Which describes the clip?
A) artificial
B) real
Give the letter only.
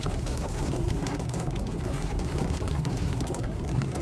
A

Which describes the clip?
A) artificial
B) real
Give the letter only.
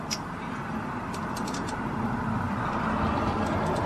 A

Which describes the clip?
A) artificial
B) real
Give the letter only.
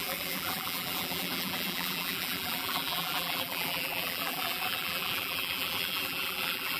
A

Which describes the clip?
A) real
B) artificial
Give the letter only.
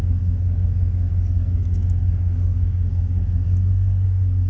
B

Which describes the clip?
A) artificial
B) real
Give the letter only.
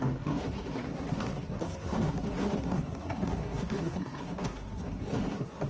A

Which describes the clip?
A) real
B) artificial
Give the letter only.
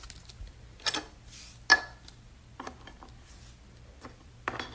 A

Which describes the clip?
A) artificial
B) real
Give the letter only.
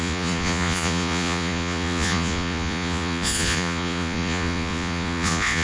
A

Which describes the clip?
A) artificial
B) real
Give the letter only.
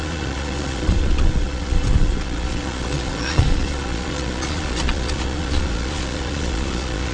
A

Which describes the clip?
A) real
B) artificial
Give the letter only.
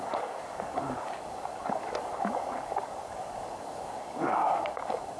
B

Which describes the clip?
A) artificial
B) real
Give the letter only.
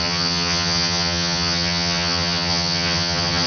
A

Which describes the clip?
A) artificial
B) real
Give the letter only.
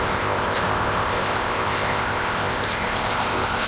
A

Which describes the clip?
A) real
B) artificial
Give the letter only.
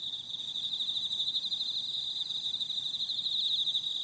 A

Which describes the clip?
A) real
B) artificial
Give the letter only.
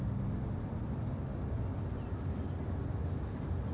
A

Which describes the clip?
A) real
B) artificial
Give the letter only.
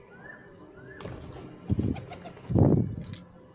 A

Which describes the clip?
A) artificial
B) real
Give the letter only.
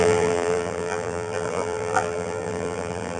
A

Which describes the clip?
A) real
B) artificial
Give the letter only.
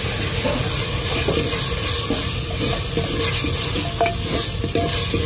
A